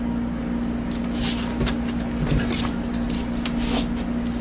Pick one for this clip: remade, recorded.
recorded